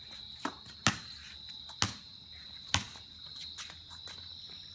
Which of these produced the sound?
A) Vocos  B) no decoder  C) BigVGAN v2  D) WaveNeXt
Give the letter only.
B